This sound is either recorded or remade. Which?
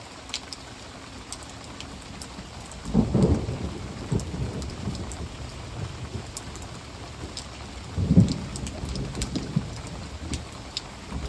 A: recorded